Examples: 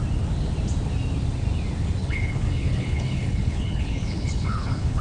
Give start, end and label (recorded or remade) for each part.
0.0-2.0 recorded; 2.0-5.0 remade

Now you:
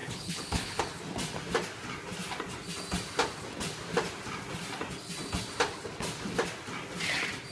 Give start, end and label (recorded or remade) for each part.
0.0-0.8 remade; 0.8-7.5 recorded

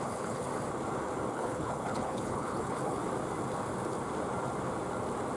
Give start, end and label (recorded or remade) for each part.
0.0-0.5 remade; 0.5-1.3 recorded; 1.3-3.0 remade; 3.0-5.4 recorded

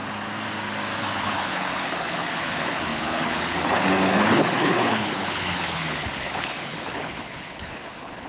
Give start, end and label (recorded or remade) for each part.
0.0-1.0 recorded; 1.0-8.3 remade

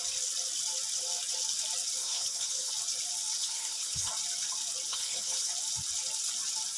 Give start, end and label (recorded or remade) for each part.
0.0-2.0 recorded; 2.0-2.7 remade; 2.7-3.4 recorded; 3.4-4.1 remade; 4.1-4.9 recorded; 4.9-5.5 remade; 5.5-6.8 recorded